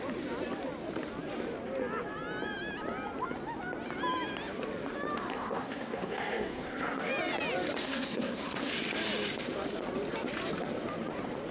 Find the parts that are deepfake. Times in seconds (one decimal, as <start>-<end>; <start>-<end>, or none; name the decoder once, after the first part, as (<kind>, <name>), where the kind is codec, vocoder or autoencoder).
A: 5.3-7.1 (codec, SNAC); 7.8-8.7